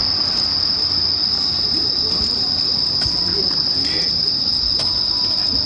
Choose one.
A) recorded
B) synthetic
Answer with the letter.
A